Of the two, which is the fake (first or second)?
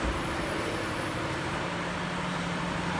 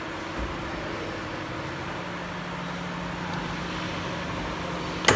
first